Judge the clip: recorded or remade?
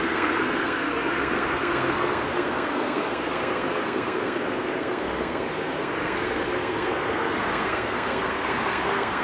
remade